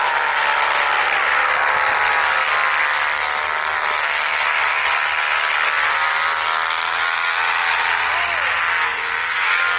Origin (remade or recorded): recorded